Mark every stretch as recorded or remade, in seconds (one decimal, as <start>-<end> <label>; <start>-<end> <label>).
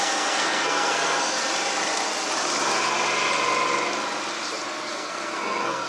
0.0-1.4 remade; 1.4-4.9 recorded; 4.9-5.9 remade